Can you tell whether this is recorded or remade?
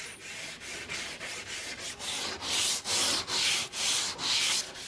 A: recorded